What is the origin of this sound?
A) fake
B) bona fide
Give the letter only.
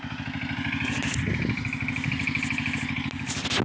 B